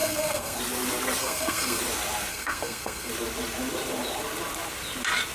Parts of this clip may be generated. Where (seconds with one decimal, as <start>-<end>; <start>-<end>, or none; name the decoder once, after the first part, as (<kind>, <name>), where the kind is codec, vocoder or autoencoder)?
0.0-0.6 (codec, SNAC); 1.2-1.8; 2.3-3.1